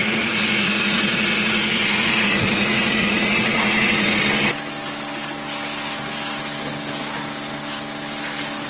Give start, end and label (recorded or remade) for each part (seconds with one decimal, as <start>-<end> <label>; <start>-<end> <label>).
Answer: 0.0-4.2 remade; 4.2-8.7 recorded

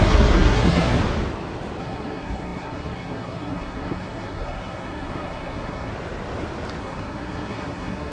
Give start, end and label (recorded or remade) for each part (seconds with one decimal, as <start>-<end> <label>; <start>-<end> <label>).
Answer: 0.0-1.0 remade; 1.0-1.8 recorded; 1.8-5.9 remade; 5.9-6.8 recorded; 6.8-8.1 remade

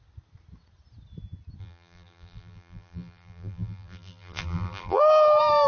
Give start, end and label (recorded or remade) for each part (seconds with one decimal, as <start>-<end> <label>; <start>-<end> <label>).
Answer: 0.0-1.6 recorded; 1.6-5.0 remade; 5.0-5.7 recorded

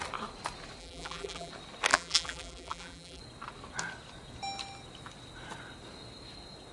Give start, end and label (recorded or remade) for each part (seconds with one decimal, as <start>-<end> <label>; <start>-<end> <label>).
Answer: 0.0-0.8 recorded; 0.8-1.5 remade; 1.5-1.9 recorded; 1.9-3.2 remade; 3.2-6.7 recorded

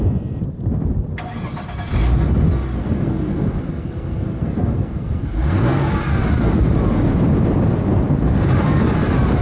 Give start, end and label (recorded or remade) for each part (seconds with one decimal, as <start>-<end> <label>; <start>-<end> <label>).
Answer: 0.0-2.8 recorded; 2.8-5.9 remade; 5.9-9.4 recorded

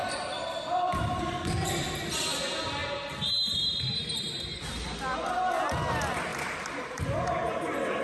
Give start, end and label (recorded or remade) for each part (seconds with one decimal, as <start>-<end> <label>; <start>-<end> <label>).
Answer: 0.0-1.9 remade; 1.9-6.3 recorded; 6.3-7.0 remade; 7.0-8.0 recorded

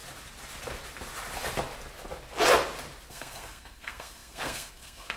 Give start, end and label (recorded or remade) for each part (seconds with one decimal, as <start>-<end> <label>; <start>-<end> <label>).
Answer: 0.0-3.1 recorded; 3.1-5.2 remade